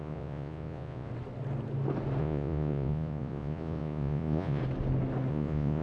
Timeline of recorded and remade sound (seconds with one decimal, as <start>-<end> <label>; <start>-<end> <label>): 0.0-1.1 remade; 1.1-2.2 recorded; 2.2-4.6 remade; 4.6-5.3 recorded; 5.3-5.8 remade